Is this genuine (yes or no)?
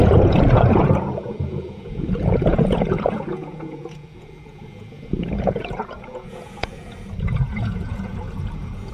no